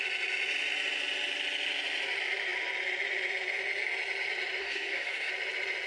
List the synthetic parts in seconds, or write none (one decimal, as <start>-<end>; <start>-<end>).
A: 4.6-5.3